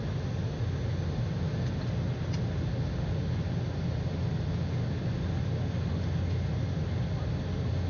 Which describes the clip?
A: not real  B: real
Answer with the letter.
B